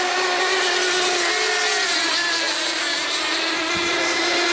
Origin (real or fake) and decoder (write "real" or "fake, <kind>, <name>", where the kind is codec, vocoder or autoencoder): real